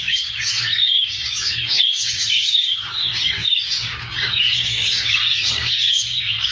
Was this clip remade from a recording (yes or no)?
yes